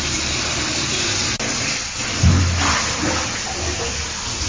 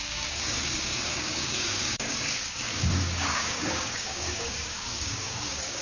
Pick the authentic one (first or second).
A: first